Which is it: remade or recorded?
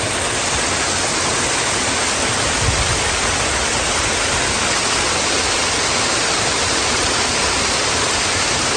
recorded